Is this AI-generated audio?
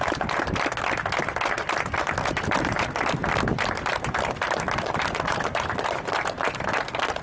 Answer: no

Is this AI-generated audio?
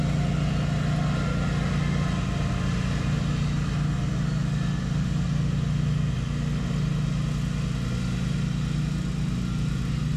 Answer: no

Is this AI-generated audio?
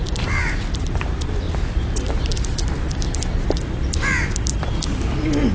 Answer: no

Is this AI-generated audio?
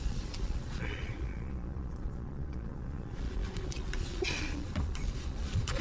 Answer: yes